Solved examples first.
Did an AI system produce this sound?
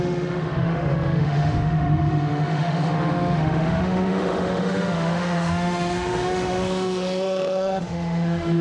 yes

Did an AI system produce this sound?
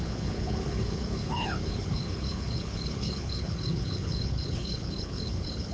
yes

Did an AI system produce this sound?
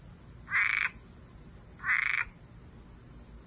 no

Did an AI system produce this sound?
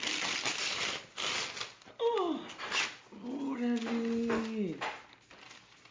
no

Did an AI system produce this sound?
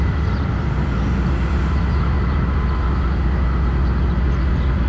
no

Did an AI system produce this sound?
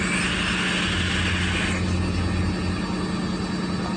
no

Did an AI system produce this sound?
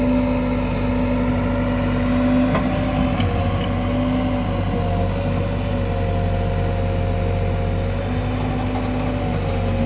no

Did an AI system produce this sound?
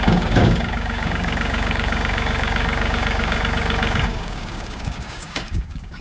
yes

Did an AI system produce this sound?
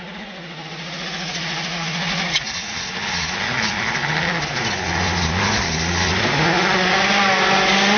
no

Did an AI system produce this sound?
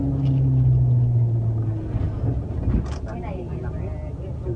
no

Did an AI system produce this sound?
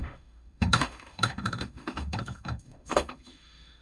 yes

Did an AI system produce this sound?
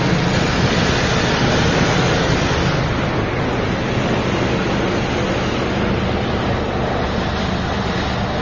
no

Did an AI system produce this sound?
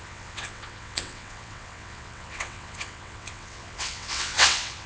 yes